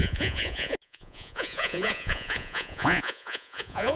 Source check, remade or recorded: remade